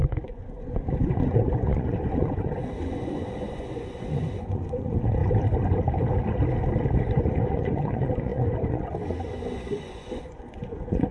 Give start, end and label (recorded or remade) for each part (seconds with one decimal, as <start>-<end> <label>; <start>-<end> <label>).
0.0-5.2 remade; 5.2-7.0 recorded; 7.0-11.1 remade